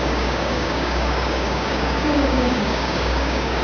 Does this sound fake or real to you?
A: fake